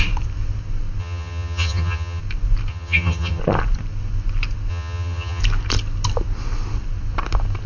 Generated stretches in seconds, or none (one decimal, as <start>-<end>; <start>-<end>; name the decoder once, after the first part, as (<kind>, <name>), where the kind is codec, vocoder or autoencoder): 1.0-2.2 (vocoder, HiFi-GAN); 2.7-3.4; 4.7-5.4